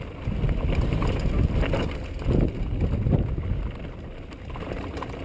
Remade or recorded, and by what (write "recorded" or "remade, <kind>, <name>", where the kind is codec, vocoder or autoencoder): recorded